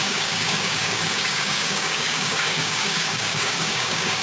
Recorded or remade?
remade